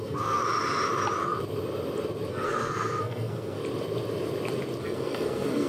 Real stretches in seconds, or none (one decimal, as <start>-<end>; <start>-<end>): 0.4-2.3; 3.6-4.8